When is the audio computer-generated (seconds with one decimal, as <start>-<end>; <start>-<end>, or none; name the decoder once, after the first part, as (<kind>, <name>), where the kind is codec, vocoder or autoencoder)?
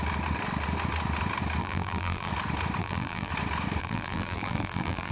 1.6-2.3 (vocoder, BigVGAN v2); 2.8-3.3; 3.8-5.1